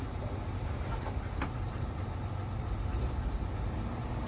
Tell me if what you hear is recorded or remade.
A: recorded